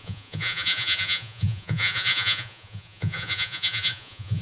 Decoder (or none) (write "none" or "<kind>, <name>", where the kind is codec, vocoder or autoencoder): vocoder, Vocos